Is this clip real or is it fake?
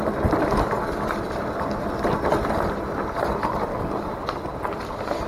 real